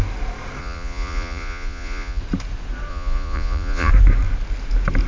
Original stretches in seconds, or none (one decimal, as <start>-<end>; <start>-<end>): 0.0-0.6; 2.2-2.9; 3.9-5.1